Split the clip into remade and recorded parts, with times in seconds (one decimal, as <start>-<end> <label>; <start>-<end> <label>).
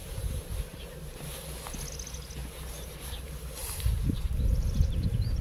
0.0-0.8 remade; 0.8-2.4 recorded; 2.4-5.4 remade